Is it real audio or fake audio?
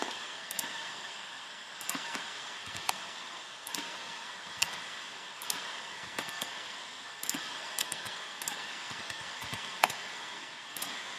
fake